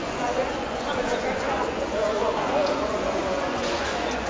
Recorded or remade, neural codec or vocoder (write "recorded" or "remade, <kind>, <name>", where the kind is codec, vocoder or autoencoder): remade, vocoder, Vocos